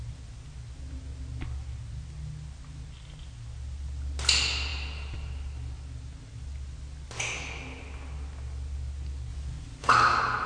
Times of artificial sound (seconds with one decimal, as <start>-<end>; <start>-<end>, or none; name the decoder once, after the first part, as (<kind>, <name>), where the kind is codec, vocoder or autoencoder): none